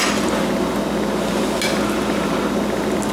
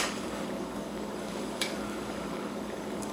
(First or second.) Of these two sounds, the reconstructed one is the second